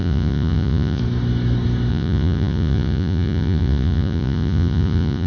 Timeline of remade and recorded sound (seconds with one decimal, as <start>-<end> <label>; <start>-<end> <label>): 0.0-1.0 remade; 1.0-1.9 recorded; 1.9-5.3 remade